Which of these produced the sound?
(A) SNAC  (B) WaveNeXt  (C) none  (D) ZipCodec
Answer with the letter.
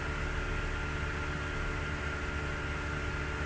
C